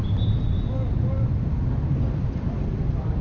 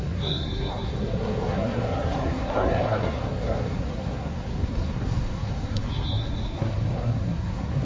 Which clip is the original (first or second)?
first